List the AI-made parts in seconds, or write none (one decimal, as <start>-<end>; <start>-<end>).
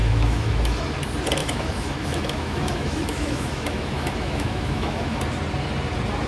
0.0-0.8; 1.4-5.2